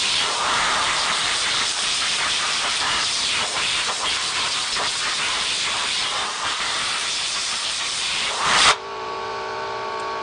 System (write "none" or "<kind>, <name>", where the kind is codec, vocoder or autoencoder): vocoder, BigVGAN v2